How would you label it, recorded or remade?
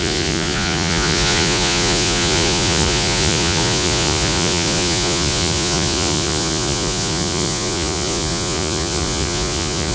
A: remade